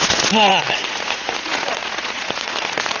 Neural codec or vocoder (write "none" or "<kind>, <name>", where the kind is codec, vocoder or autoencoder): vocoder, Vocos